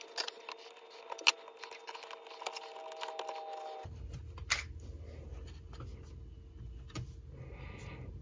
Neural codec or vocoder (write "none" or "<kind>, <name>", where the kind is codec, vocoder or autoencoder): none